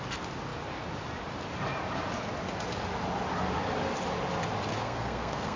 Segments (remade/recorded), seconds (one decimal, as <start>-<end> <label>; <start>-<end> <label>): 0.0-4.7 recorded; 4.7-5.6 remade